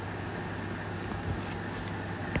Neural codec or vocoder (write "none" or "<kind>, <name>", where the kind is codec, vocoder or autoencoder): none